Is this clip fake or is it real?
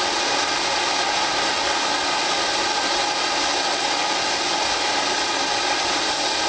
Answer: real